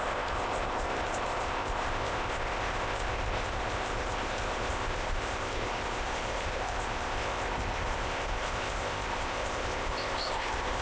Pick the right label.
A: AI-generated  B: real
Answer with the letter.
A